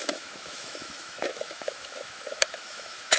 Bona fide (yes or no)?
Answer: no